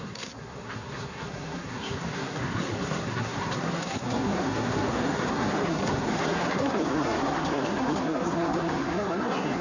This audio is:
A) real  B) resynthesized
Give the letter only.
B